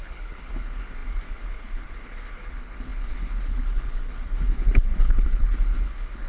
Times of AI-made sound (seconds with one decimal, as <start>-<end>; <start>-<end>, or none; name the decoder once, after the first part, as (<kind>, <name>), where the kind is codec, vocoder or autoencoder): 0.0-6.3 (codec, HILCodec)